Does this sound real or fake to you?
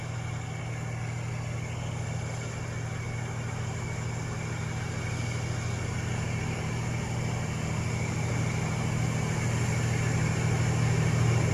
real